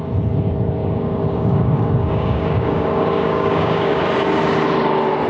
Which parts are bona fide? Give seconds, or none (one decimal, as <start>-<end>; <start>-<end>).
0.0-0.8; 4.0-5.3